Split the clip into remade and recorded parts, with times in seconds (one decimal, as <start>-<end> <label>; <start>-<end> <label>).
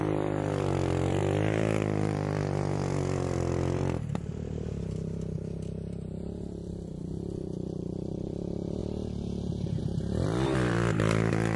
0.0-8.8 remade; 8.8-9.8 recorded; 9.8-11.6 remade